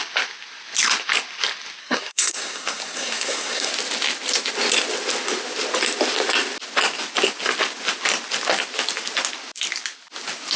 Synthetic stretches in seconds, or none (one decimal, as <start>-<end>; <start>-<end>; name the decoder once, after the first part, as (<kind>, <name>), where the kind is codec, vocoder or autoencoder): 1.8-3.7 (codec, SNAC)